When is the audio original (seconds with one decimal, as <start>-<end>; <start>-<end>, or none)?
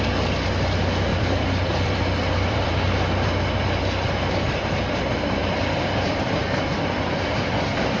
0.0-1.1; 2.7-5.4; 6.4-8.0